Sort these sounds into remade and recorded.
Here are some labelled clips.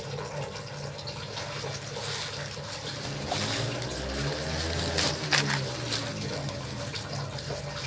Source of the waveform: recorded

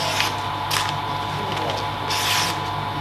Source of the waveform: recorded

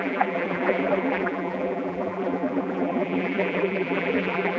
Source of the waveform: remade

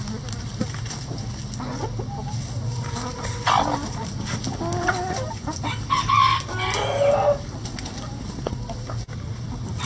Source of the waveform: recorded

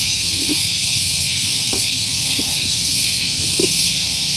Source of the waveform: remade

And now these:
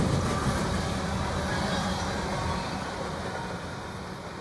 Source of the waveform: recorded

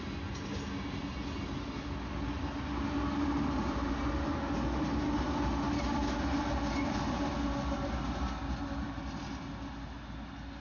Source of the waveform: recorded